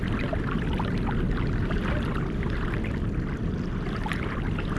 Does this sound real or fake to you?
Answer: real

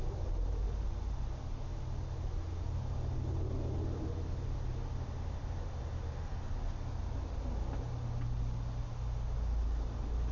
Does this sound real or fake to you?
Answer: real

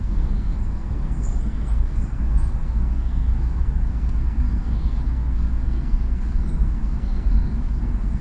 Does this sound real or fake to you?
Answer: fake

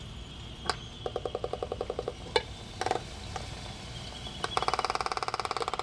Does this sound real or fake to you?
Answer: real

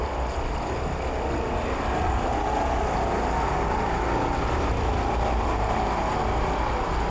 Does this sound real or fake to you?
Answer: real